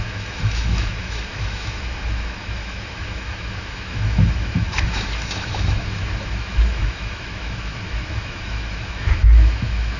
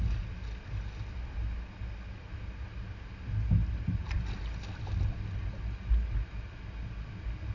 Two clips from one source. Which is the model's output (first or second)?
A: first